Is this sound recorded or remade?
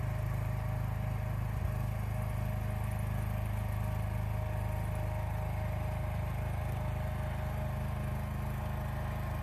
recorded